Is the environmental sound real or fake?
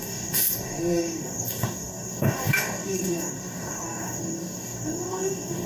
fake